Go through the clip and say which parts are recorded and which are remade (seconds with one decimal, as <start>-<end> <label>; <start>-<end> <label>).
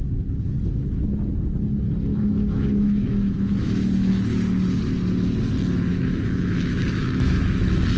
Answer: 0.0-2.1 recorded; 2.1-4.1 remade; 4.1-5.9 recorded; 5.9-8.0 remade